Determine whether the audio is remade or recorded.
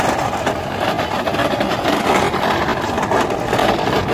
recorded